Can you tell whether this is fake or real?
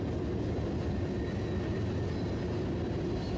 real